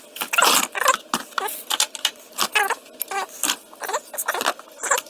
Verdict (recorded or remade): recorded